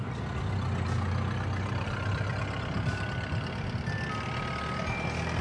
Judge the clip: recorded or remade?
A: recorded